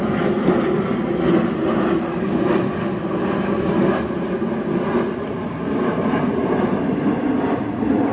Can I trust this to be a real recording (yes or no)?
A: yes